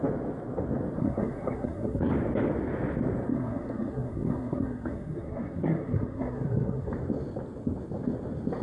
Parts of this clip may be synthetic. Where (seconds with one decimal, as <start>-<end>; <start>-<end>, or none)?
1.0-2.1; 3.3-6.9